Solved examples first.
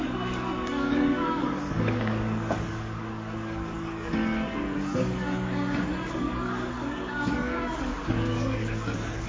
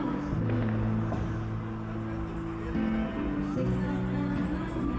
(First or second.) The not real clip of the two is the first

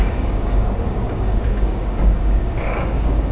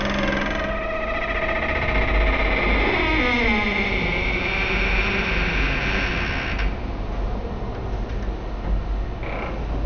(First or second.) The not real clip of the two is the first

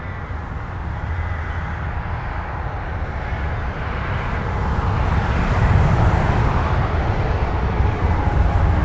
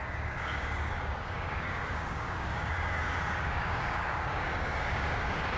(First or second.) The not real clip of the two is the second